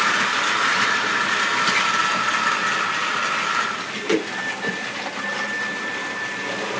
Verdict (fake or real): real